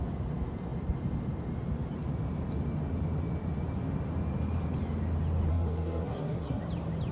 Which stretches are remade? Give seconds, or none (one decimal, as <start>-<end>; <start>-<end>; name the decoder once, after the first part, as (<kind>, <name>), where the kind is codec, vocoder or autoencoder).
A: 5.5-6.6 (codec, SNAC)